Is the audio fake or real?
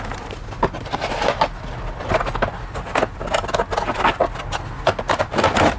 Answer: real